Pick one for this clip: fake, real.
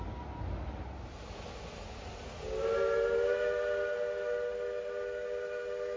real